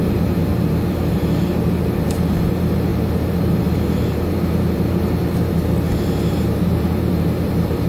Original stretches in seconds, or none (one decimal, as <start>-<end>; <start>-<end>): 0.4-1.1